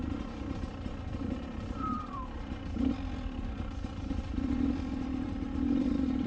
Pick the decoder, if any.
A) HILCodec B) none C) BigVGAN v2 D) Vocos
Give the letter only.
C